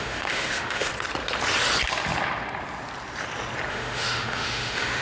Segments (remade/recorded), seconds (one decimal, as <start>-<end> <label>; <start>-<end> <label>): 0.0-0.9 remade; 0.9-3.7 recorded; 3.7-5.0 remade